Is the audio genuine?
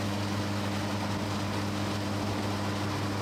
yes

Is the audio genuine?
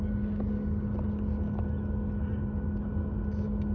yes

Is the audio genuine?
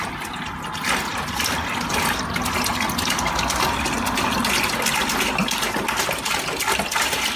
yes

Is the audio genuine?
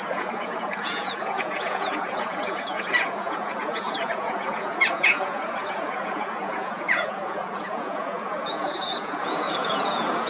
no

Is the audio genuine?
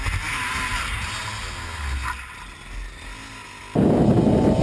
yes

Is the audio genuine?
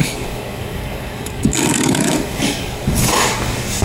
no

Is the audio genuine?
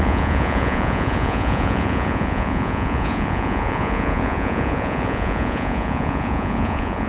no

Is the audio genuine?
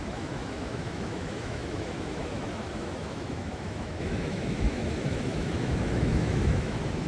no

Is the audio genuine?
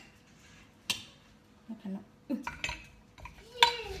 yes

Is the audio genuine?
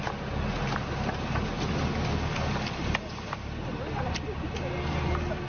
yes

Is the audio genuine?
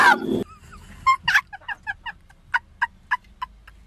yes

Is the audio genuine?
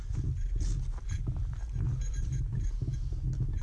yes